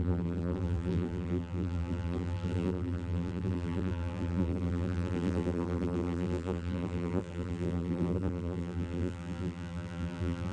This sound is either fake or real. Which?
fake